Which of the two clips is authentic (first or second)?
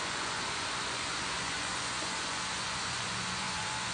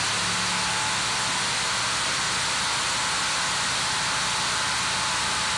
second